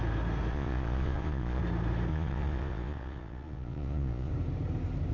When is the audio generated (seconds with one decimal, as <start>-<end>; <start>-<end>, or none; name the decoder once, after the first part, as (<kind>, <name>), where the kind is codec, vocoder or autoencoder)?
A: 0.5-1.6 (vocoder, Vocos); 2.1-4.3